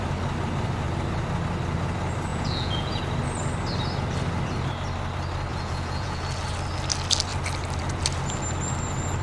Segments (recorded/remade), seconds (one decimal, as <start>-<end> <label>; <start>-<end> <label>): 0.0-2.3 recorded; 2.3-3.0 remade; 3.0-5.5 recorded; 5.5-6.2 remade; 6.2-9.2 recorded